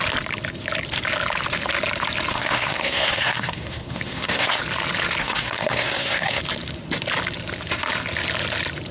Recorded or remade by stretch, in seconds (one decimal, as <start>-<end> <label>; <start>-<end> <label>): 0.0-2.3 recorded; 2.3-4.6 remade; 4.6-5.2 recorded; 5.2-6.4 remade; 6.4-8.9 recorded